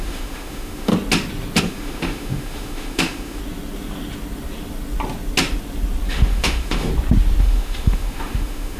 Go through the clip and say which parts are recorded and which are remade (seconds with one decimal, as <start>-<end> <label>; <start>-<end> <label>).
0.0-0.9 remade; 0.9-1.6 recorded; 1.6-3.4 remade; 3.4-6.1 recorded; 6.1-6.9 remade; 6.9-7.4 recorded; 7.4-8.8 remade